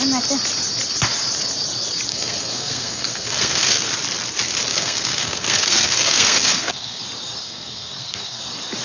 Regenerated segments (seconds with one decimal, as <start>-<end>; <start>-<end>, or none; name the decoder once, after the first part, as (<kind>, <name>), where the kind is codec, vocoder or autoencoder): 2.1-3.9 (codec, SNAC); 4.7-7.0; 7.4-8.4